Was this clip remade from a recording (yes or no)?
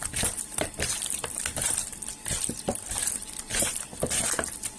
no